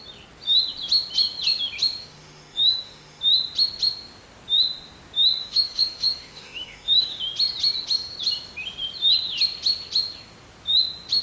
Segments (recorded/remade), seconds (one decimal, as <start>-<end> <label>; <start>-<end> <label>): 0.0-2.0 recorded; 2.0-3.2 remade; 3.2-5.4 recorded; 5.4-7.2 remade; 7.2-11.2 recorded